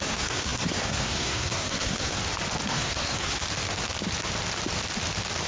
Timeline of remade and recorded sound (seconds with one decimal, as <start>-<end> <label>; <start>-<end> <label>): 0.0-2.2 remade; 2.2-2.7 recorded; 2.7-3.4 remade; 3.4-5.5 recorded